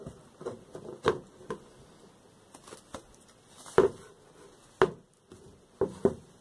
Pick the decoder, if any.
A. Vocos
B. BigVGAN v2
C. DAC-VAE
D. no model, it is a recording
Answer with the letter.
D